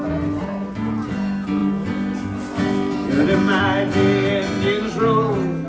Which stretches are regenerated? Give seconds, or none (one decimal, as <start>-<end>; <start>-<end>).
none